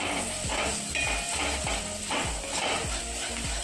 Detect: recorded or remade recorded